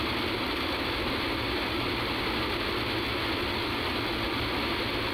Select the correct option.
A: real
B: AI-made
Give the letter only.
A